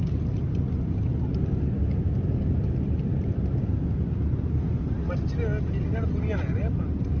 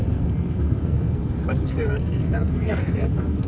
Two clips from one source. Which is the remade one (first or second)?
second